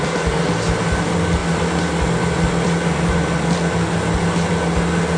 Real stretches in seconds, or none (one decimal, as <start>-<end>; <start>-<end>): 0.0-5.2